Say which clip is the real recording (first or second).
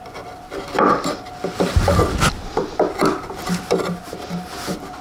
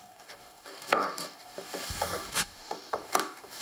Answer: first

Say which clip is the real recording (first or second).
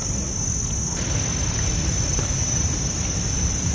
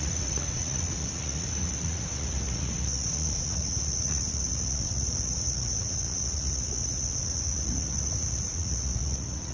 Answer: first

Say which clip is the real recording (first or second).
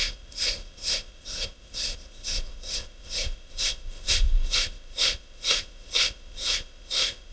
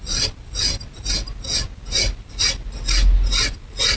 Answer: second